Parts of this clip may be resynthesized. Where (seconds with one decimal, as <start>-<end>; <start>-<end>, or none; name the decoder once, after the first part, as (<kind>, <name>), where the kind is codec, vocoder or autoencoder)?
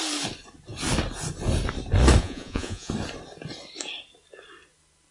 2.2-2.9 (vocoder, Vocos)